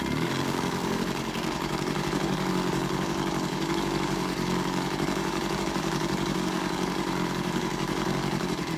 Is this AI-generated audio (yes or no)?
yes